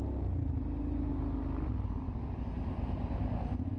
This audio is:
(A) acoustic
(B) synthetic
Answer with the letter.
A